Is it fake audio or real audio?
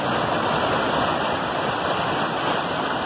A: real